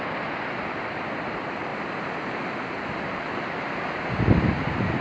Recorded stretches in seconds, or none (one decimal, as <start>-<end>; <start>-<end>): 0.0-5.0